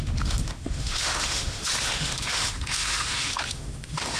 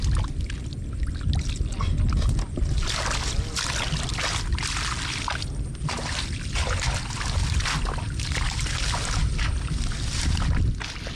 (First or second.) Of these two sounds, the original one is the second